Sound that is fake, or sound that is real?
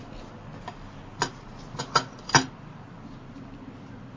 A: real